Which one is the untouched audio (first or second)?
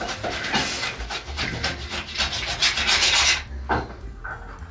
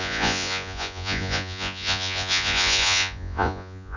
first